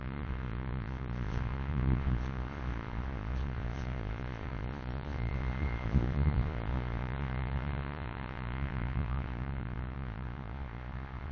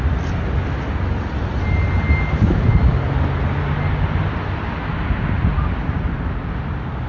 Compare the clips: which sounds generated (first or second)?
first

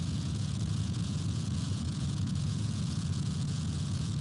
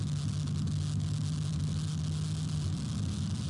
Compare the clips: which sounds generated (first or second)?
first